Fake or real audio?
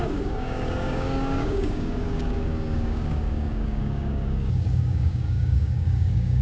fake